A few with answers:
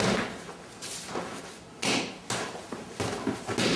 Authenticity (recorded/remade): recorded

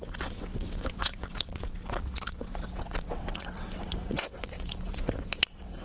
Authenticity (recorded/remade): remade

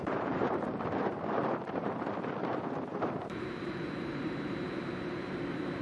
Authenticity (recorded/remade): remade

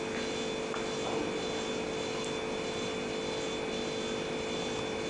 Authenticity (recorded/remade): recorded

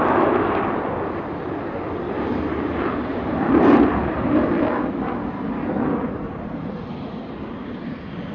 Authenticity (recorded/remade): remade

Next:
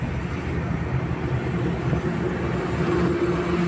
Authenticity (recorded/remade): recorded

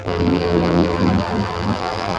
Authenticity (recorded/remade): remade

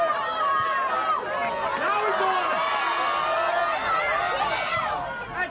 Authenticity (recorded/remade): recorded